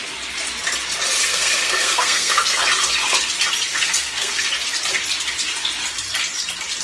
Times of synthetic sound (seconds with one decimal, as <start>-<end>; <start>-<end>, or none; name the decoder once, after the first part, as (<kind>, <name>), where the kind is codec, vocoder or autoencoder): 1.2-2.6 (codec, SNAC); 3.7-4.5